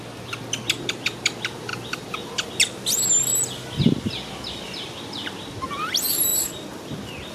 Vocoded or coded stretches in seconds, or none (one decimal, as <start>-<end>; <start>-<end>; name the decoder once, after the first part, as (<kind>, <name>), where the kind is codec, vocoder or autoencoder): 1.7-2.5 (vocoder, BigVGAN v2); 6.3-7.3

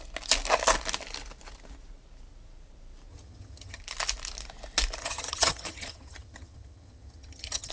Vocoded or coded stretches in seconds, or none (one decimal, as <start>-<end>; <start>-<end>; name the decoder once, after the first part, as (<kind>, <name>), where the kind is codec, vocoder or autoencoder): 3.1-3.8 (vocoder, HiFi-GAN); 5.0-7.7